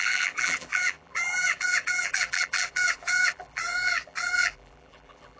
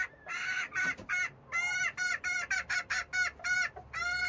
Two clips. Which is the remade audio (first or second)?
first